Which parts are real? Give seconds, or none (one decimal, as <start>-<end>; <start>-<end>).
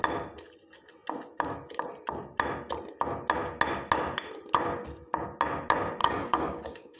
0.0-6.0